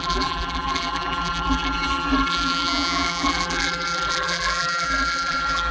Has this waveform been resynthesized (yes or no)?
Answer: yes